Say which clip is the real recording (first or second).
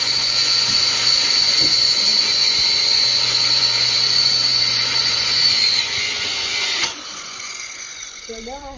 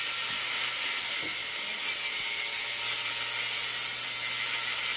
second